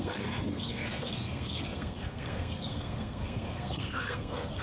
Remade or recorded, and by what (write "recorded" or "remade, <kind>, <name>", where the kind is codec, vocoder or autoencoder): remade, codec, SNAC